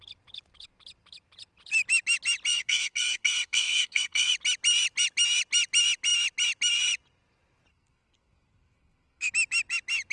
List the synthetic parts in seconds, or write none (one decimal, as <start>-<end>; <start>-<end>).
2.5-4.3; 7.7-9.3